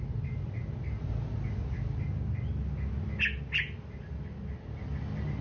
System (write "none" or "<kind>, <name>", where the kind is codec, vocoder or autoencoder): none